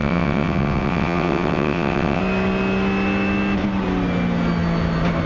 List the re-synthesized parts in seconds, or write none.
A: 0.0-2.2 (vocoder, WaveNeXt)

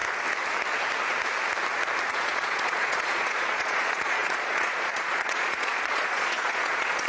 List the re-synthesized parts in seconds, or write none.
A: 2.1-7.1 (vocoder, Vocos)

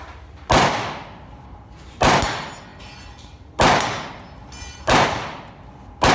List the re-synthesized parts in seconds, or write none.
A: none

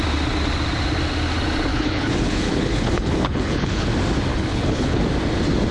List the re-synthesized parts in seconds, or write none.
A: 1.7-3.9 (codec, HILCodec); 4.3-5.0